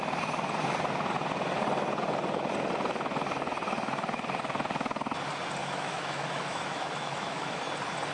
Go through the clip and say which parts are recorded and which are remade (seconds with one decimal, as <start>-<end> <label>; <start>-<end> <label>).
0.0-5.6 recorded; 5.6-7.6 remade; 7.6-8.1 recorded